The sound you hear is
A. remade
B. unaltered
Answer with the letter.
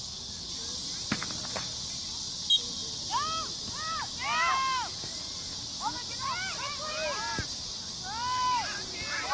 B